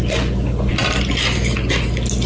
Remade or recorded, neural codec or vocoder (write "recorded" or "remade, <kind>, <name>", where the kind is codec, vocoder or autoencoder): recorded